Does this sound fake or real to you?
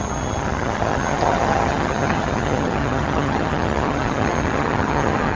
fake